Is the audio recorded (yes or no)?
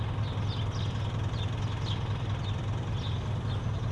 yes